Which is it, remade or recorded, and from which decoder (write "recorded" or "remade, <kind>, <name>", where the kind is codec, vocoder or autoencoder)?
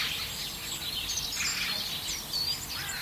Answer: recorded